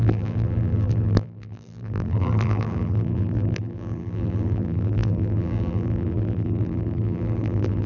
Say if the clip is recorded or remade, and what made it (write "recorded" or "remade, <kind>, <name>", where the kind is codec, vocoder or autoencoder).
remade, vocoder, BigVGAN v2